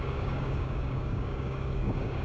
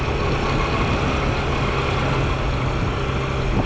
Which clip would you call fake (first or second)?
first